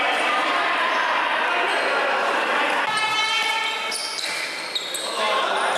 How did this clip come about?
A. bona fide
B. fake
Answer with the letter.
A